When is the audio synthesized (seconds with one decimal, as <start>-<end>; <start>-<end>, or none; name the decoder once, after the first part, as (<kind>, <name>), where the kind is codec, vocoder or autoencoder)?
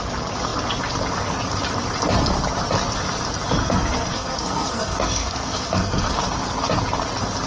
3.6-6.1 (codec, SNAC)